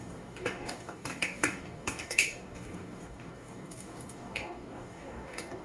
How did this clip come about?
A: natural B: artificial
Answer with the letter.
B